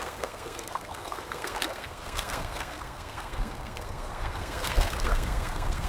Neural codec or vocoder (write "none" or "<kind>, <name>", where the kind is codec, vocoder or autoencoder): codec, SNAC